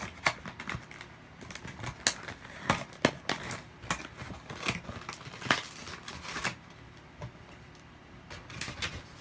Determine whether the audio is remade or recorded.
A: recorded